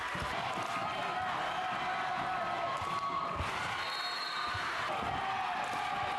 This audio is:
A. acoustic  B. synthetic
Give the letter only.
A